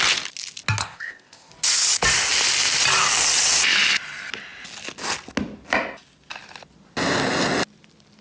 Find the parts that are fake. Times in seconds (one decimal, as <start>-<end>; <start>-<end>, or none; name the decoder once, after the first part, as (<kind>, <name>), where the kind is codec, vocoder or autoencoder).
0.8-1.5 (codec, ZipCodec)